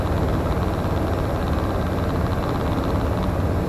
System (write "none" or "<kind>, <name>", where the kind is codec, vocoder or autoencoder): none